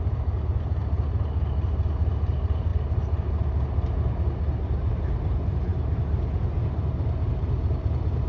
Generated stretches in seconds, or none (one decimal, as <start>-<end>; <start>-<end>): none